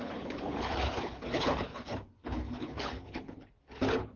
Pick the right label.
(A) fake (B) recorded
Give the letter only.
A